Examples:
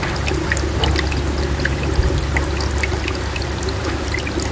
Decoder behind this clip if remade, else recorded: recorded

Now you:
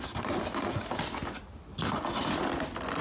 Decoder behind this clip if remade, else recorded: recorded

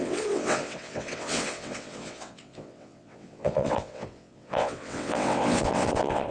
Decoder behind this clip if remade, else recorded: remade, vocoder, WaveNeXt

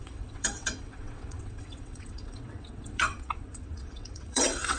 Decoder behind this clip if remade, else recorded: remade, vocoder, WaveNeXt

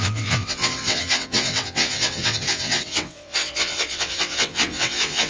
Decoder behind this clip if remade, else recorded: remade, vocoder, WaveNeXt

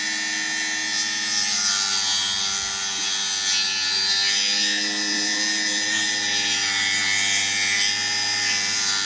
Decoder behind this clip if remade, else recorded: recorded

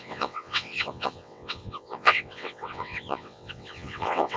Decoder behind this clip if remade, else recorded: remade, vocoder, WaveNeXt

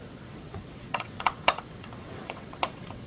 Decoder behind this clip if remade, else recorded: remade, vocoder, WaveNeXt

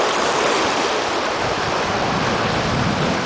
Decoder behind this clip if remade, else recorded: recorded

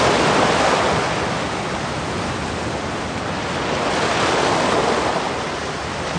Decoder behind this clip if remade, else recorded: recorded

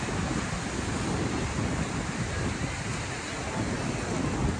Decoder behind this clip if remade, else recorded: recorded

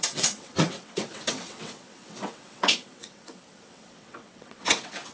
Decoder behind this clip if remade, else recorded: remade, vocoder, WaveNeXt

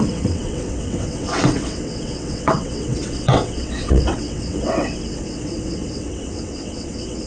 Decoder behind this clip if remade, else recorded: remade, vocoder, WaveNeXt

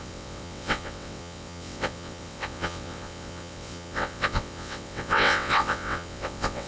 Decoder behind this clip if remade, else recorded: remade, vocoder, WaveNeXt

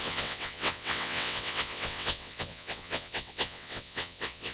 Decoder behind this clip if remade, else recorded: remade, vocoder, WaveNeXt